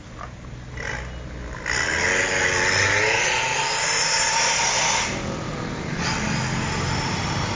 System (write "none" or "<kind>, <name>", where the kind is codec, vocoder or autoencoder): none